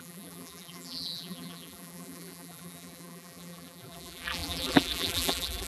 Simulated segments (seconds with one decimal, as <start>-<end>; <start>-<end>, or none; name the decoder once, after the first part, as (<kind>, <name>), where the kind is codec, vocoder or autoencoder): 0.0-5.7 (vocoder, BigVGAN v2)